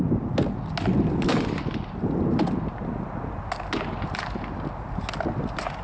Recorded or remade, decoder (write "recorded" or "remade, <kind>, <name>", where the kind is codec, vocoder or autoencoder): recorded